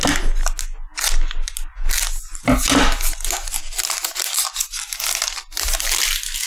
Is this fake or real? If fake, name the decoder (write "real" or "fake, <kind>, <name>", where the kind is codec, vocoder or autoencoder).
real